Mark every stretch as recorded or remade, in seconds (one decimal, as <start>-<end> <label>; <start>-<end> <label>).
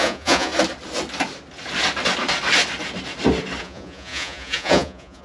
0.0-0.5 remade; 0.5-3.6 recorded; 3.6-5.2 remade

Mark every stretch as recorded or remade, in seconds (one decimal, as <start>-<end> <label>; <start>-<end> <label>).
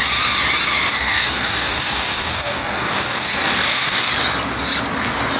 0.0-0.9 recorded; 0.9-4.1 remade; 4.1-5.4 recorded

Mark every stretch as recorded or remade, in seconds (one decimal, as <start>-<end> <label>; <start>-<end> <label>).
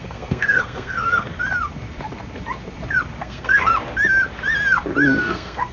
0.0-1.3 remade; 1.3-3.2 recorded; 3.2-3.7 remade; 3.7-5.2 recorded; 5.2-5.7 remade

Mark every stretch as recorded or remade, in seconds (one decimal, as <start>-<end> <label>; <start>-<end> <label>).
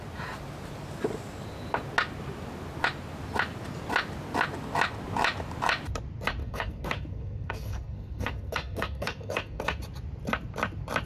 0.0-6.4 recorded; 6.4-9.8 remade; 9.8-11.1 recorded